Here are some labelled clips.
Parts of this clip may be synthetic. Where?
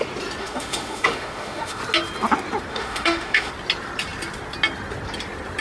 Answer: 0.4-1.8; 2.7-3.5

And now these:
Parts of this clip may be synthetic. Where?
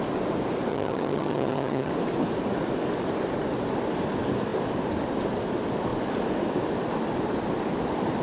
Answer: 0.7-1.9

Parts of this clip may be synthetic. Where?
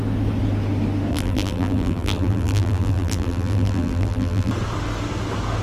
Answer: 1.1-4.5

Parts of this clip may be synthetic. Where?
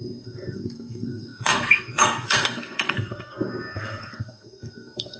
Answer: 0.0-5.2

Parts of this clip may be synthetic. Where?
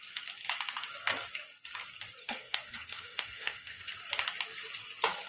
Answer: 2.2-3.8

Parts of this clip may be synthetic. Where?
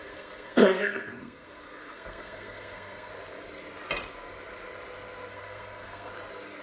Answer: 0.0-3.1; 5.3-6.1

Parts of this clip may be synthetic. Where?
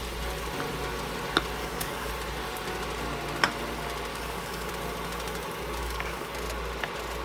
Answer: 1.6-2.1; 4.1-4.7; 5.8-6.3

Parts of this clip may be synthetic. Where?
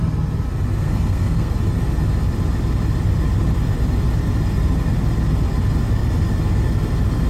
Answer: 0.8-1.5